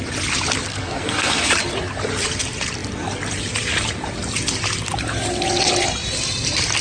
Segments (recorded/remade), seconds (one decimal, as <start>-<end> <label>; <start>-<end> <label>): 0.0-0.7 recorded; 0.7-1.5 remade; 1.5-6.8 recorded